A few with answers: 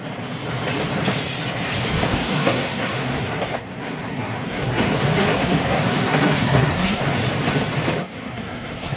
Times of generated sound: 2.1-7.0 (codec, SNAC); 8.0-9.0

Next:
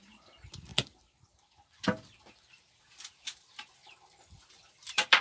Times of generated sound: 0.7-2.8 (vocoder, BigVGAN v2); 3.8-5.2

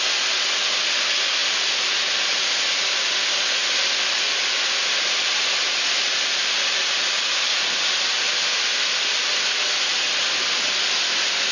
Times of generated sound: none

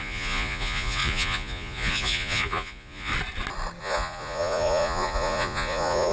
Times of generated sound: 0.0-3.1 (vocoder, Vocos); 3.8-6.1

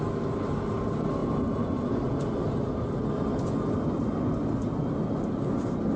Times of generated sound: none

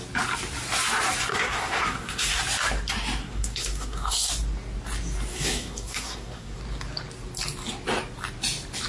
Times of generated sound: 1.3-2.4 (codec, SNAC); 3.2-4.3; 5.3-6.6

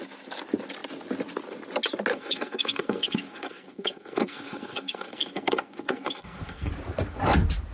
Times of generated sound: 2.1-6.7 (codec, SNAC)